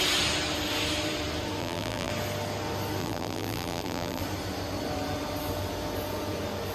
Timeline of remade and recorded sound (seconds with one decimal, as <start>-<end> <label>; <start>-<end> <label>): 0.0-1.6 recorded; 1.6-2.1 remade; 2.1-3.0 recorded; 3.0-4.2 remade; 4.2-6.7 recorded